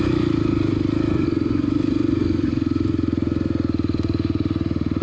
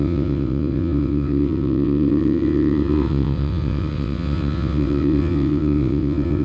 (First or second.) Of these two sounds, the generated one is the second